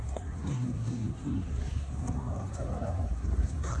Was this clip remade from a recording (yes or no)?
yes